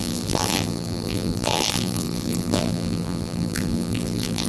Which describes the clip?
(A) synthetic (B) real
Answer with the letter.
A